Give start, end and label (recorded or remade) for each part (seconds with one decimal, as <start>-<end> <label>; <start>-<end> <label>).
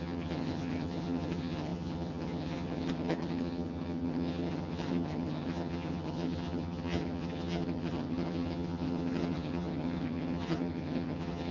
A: 0.0-11.5 remade